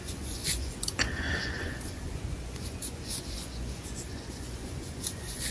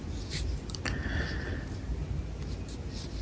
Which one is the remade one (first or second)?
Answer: first